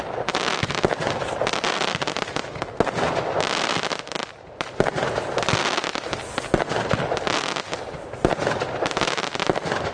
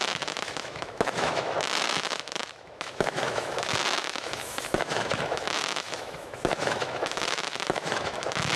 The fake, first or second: second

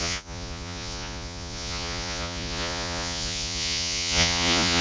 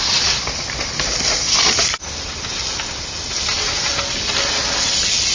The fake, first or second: first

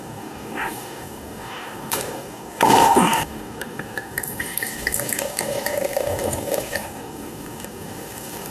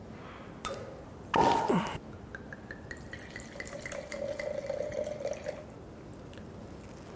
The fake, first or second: first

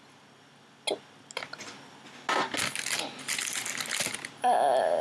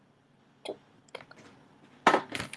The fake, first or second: second